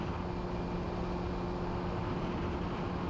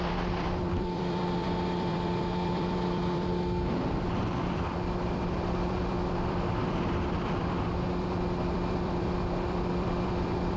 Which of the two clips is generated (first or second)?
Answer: second